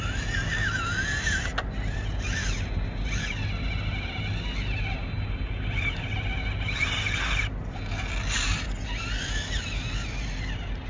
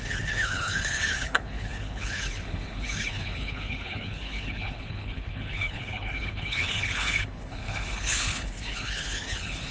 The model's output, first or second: second